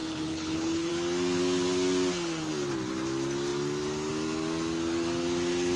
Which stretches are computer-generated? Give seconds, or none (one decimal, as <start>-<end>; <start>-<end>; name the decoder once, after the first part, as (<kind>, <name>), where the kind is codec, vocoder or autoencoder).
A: 0.0-0.9 (codec, HILCodec)